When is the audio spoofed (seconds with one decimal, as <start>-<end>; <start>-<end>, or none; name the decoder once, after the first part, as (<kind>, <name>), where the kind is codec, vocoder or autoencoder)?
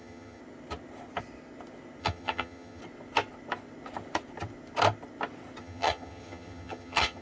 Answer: 0.0-0.4 (vocoder, HiFi-GAN); 2.0-2.8; 5.6-7.2